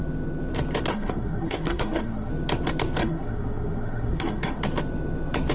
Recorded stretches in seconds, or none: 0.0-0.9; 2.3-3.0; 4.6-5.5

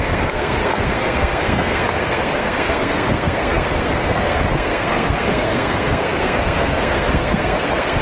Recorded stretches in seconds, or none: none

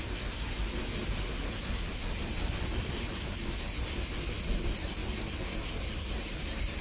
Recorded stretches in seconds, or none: 0.0-6.8

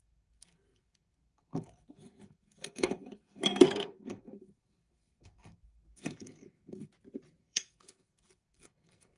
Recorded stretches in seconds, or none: 6.9-7.4

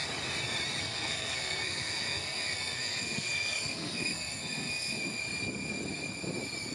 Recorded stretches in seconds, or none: 0.0-0.8; 5.2-6.7

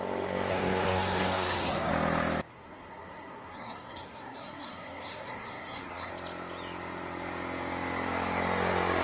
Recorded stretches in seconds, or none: 0.0-0.5; 1.9-2.5; 6.1-9.0

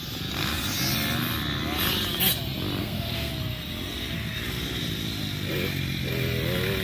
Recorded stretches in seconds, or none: 0.0-2.8; 3.3-6.8